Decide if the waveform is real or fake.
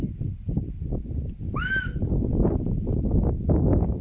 real